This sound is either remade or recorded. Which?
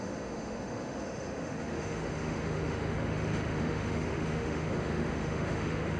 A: remade